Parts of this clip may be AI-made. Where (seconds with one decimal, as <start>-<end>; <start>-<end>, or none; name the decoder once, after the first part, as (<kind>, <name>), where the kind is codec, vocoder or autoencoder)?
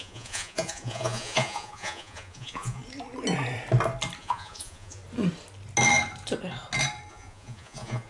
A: 0.0-2.8 (vocoder, Vocos); 4.2-5.0; 7.1-8.1